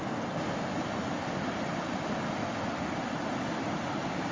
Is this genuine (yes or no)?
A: yes